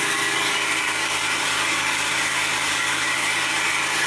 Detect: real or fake fake